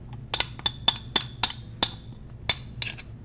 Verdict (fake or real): real